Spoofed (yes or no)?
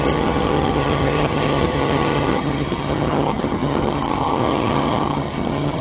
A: yes